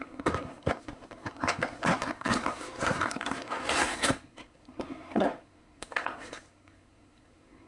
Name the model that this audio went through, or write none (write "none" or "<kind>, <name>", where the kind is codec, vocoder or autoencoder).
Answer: codec, SNAC